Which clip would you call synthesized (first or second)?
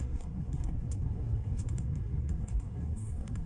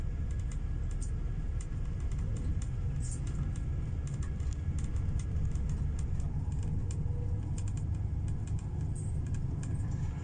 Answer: first